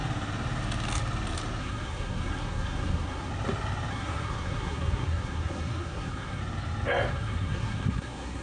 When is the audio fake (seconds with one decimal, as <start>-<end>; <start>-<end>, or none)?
1.6-3.3; 3.9-6.4; 7.1-8.4